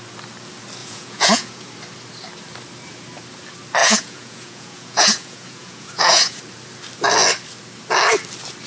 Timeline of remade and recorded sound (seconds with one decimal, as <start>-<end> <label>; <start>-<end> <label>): 0.0-0.8 recorded; 0.8-1.7 remade; 1.7-3.8 recorded; 3.8-6.4 remade; 6.4-8.7 recorded